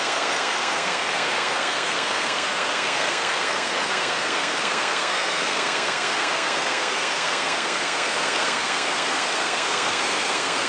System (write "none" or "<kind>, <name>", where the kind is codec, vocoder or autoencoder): codec, SNAC